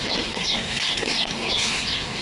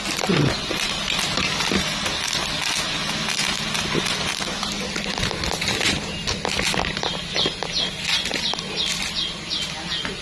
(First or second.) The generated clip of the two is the first